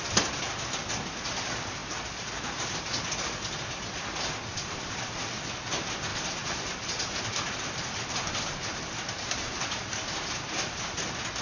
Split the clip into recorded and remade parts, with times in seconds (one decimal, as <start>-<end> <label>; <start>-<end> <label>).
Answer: 0.0-4.5 recorded; 4.5-5.3 remade; 5.3-6.1 recorded; 6.1-11.0 remade; 11.0-11.4 recorded